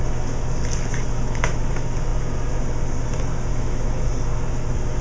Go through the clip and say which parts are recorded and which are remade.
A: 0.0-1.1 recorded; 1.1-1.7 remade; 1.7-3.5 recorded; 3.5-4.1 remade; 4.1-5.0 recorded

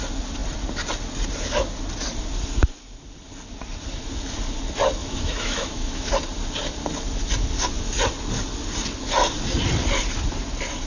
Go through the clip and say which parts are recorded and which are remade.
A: 0.0-5.0 recorded; 5.0-6.1 remade; 6.1-10.9 recorded

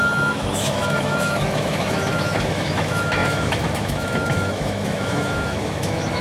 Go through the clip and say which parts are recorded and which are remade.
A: 0.0-6.2 remade

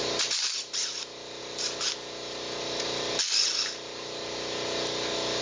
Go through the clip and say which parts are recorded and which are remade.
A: 0.0-5.4 recorded

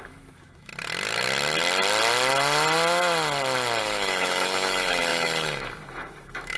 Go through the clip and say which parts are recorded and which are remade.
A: 0.0-0.7 remade; 0.7-3.8 recorded; 3.8-6.6 remade

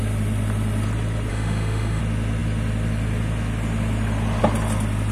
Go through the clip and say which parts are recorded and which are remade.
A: 0.0-1.3 recorded; 1.3-2.0 remade; 2.0-5.1 recorded

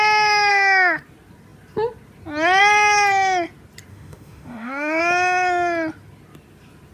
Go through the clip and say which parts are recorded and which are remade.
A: 0.0-0.5 recorded; 0.5-1.0 remade; 1.0-3.9 recorded; 3.9-5.0 remade; 5.0-6.9 recorded

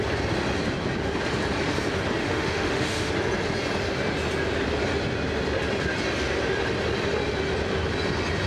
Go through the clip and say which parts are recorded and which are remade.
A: 0.0-2.2 recorded; 2.2-3.1 remade; 3.1-8.5 recorded